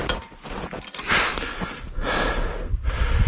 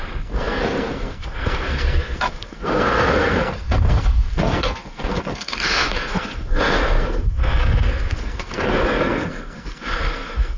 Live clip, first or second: first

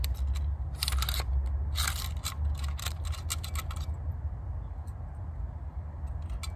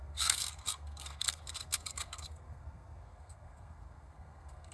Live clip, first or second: first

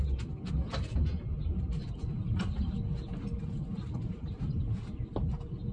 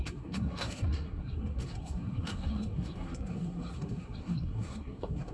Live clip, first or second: first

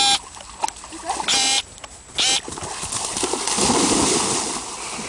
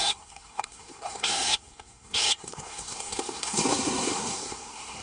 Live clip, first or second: first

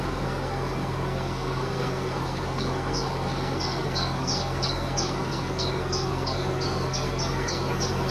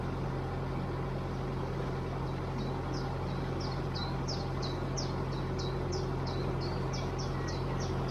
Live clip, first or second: second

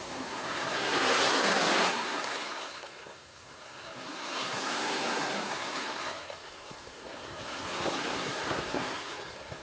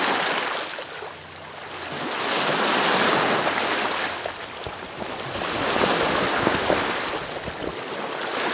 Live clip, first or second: second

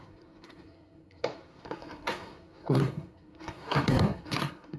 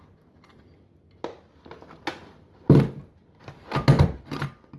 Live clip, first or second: second